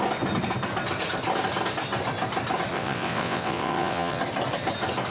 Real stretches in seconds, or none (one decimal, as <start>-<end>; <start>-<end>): 0.0-2.7; 4.2-5.1